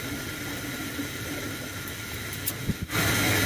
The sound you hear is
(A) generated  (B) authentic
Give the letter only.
B